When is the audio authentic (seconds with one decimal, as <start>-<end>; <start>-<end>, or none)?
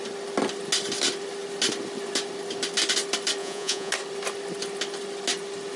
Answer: 0.0-3.4; 3.9-5.8